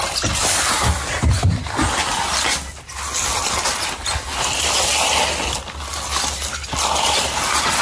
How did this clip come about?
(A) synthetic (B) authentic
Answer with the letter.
B